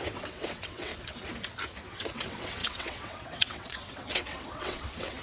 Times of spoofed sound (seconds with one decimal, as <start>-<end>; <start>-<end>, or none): 0.0-0.9; 1.9-5.2